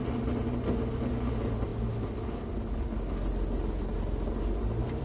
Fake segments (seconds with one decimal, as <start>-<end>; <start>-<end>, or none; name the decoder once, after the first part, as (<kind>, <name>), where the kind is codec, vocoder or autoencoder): none